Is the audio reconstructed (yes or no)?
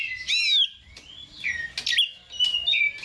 no